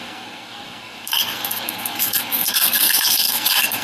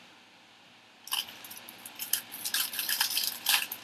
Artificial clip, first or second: first